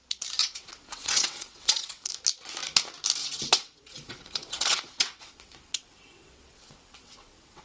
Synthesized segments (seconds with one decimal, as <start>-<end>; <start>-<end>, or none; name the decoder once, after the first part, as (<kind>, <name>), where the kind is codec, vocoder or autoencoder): 0.4-2.1 (vocoder, WaveNeXt); 3.2-7.6